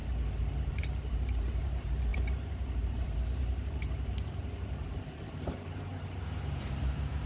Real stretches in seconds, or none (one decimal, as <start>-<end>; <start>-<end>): 0.0-0.7